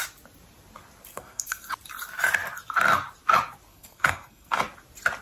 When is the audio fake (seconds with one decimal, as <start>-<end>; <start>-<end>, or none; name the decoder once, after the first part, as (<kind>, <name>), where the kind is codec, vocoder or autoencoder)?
1.1-1.7 (codec, SNAC); 3.7-4.6